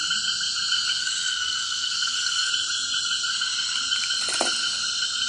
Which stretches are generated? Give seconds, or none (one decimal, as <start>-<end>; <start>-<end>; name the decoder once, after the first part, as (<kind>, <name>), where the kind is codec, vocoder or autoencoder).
1.0-2.5 (codec, SNAC)